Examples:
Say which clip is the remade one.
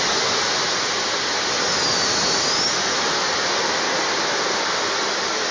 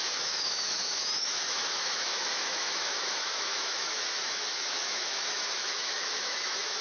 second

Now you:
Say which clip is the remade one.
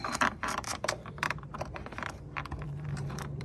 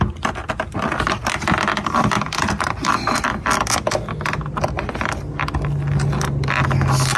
first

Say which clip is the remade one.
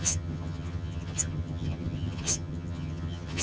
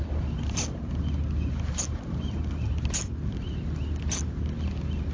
first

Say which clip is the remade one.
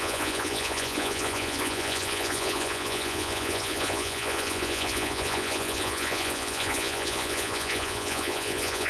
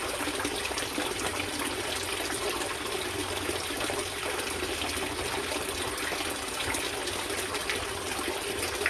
first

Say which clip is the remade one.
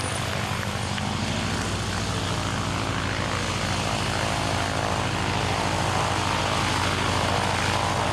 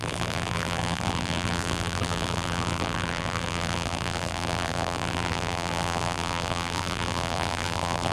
second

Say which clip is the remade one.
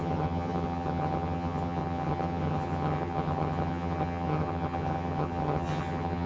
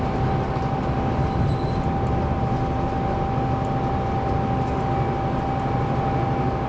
first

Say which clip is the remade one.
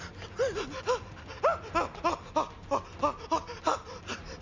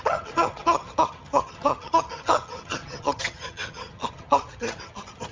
second